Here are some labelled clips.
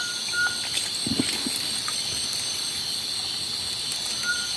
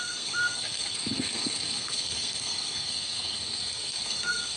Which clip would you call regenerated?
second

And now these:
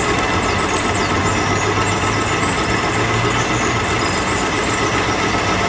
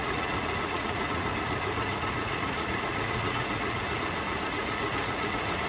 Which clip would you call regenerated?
second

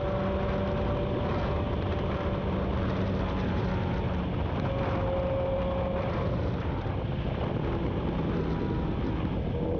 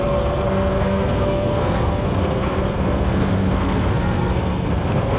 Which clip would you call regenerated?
second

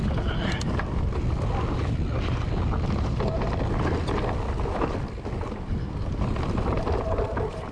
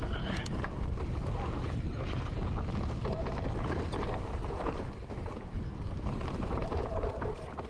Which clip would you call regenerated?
second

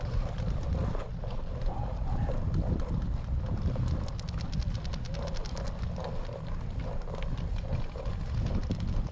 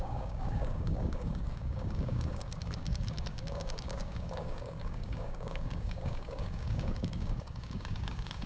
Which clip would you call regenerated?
second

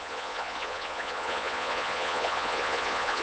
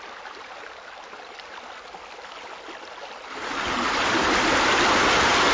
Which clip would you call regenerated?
first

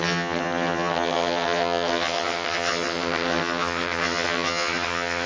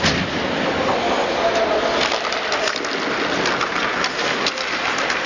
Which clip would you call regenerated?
first